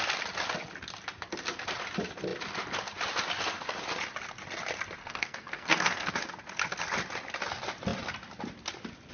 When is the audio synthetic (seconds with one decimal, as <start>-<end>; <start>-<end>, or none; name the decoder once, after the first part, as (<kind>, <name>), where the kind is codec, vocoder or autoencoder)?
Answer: 5.0-6.1 (codec, SNAC)